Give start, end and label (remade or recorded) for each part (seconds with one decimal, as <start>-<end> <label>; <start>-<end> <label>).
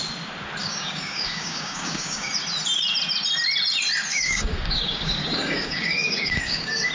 0.0-0.6 recorded; 0.6-2.3 remade; 2.3-4.1 recorded; 4.1-6.9 remade